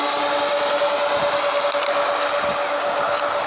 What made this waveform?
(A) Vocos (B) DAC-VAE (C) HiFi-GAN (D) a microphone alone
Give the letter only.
D